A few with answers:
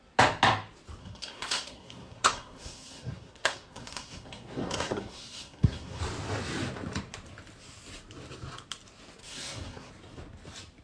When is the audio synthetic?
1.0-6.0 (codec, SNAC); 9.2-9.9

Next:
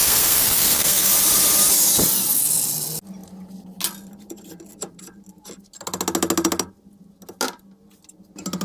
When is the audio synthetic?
0.0-1.1 (codec, SNAC)

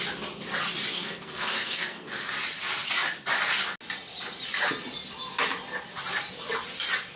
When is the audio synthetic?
0.9-2.3 (codec, SNAC)

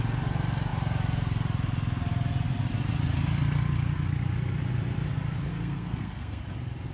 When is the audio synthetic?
5.5-6.4 (codec, SNAC)

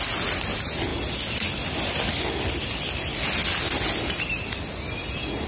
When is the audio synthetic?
none

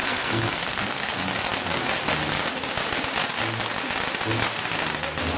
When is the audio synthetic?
0.0-1.1 (codec, SNAC)

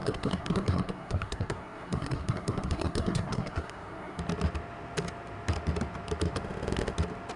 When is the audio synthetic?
0.0-4.2 (codec, SNAC)

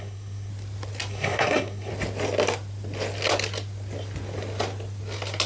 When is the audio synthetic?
0.0-0.5 (codec, SNAC); 1.1-1.9